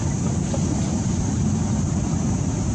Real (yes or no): yes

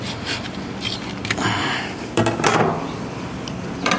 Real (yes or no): yes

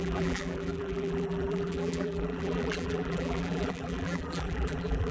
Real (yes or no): no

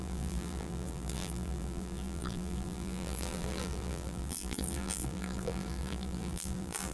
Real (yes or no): no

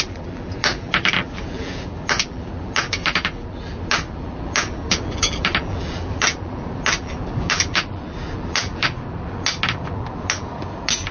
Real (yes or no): no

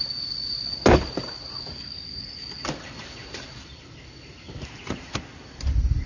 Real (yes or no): no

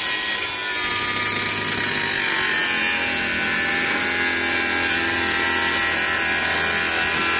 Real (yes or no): yes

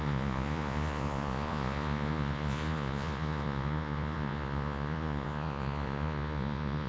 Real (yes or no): no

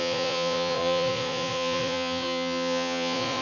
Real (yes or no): no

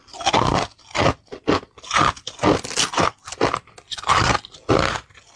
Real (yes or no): yes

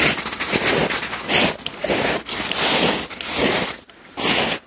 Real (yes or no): yes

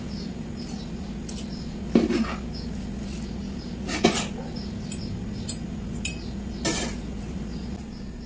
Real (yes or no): yes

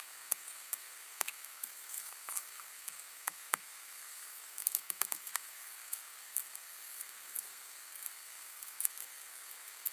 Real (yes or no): no